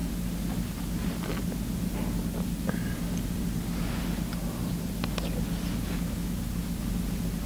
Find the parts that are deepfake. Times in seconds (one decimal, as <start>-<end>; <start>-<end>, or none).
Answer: none